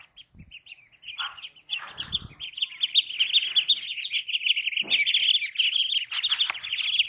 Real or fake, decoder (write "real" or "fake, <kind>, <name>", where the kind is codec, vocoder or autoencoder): real